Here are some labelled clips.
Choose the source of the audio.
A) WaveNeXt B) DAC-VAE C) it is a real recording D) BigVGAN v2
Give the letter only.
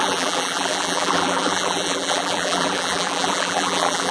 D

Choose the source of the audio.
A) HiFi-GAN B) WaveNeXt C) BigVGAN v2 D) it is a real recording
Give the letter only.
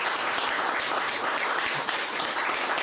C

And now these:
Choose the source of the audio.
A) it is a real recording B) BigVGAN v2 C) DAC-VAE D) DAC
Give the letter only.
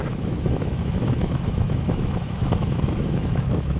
C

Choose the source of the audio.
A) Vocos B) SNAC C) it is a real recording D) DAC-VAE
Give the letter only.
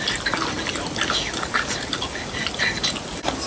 C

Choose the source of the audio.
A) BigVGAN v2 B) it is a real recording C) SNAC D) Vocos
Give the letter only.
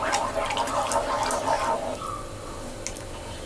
B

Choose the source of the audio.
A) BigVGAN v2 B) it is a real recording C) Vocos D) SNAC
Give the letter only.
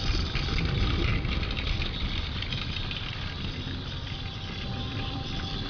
B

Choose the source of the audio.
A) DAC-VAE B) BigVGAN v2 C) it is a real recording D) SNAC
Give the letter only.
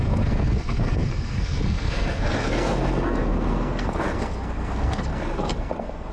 D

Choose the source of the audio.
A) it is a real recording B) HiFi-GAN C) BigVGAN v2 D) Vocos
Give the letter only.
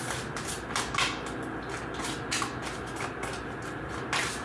A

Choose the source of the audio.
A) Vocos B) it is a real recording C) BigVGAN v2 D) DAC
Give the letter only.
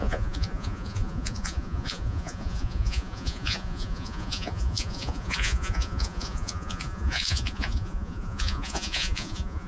A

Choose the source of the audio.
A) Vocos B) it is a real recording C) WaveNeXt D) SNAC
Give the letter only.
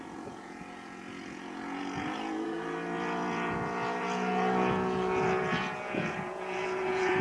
A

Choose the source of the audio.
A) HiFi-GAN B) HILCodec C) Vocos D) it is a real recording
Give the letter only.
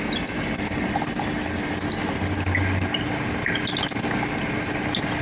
D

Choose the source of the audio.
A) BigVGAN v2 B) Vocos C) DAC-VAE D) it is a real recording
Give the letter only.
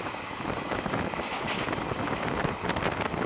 D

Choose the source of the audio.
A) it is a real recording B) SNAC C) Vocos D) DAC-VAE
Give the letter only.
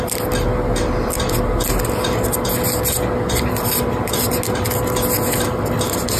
A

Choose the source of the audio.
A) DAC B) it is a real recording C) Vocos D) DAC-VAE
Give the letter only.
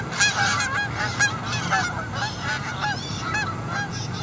B